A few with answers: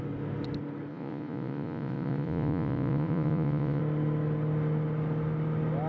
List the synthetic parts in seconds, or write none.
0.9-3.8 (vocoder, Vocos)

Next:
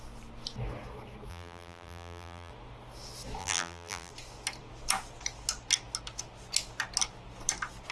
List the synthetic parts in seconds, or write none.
1.3-2.5 (vocoder, BigVGAN v2); 3.4-4.1

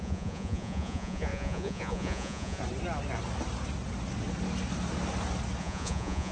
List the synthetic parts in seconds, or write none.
0.0-2.6 (vocoder, Vocos); 5.6-6.3

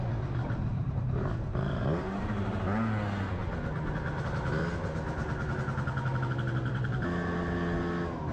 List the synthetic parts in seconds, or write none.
0.8-2.5 (vocoder, BigVGAN v2)

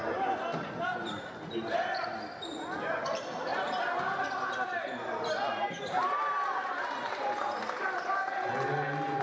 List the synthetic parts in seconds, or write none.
0.5-2.0 (vocoder, BigVGAN v2); 3.5-8.5

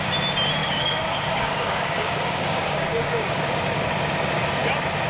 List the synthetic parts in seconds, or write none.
0.6-3.5 (codec, DAC)